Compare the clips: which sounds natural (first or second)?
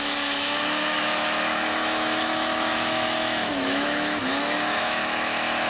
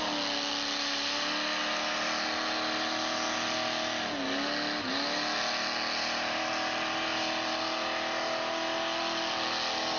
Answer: second